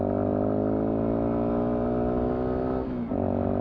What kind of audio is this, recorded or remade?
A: recorded